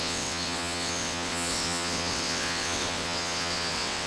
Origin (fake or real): fake